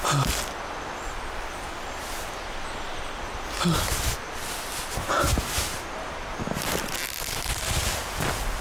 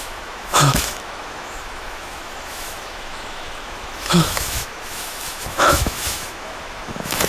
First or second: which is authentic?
first